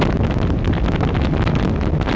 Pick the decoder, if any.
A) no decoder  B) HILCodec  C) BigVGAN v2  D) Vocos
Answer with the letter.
A